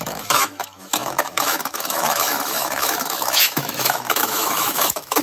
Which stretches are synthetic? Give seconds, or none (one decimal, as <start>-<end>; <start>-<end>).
0.0-5.2

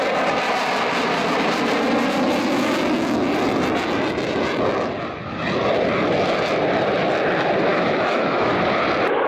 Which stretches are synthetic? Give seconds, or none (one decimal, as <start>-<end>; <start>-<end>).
7.7-8.5

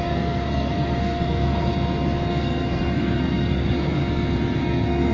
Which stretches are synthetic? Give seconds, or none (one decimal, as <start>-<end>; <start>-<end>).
0.0-1.7; 2.3-4.0; 4.6-5.1

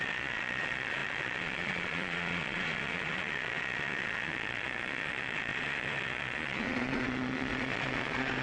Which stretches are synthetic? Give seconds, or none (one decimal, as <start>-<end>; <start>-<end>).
0.0-8.4

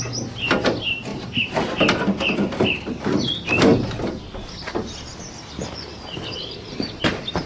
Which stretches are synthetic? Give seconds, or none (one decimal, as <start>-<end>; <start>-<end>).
none